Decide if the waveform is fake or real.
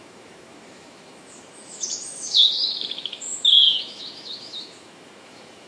fake